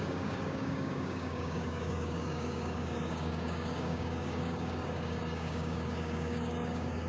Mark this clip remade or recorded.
remade